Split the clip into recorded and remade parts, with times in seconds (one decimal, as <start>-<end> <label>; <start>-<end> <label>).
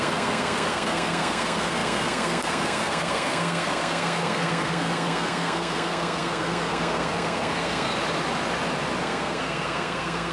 0.0-7.9 remade; 7.9-9.0 recorded; 9.0-10.3 remade